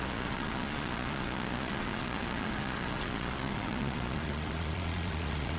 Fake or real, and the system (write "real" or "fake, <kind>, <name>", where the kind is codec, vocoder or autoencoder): fake, vocoder, Vocos